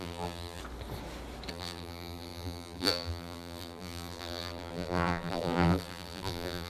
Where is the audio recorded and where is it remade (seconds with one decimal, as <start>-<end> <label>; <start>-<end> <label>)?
0.0-0.6 remade; 0.6-1.5 recorded; 1.5-6.7 remade